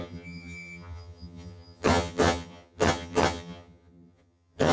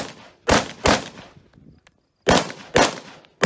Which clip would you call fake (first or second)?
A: first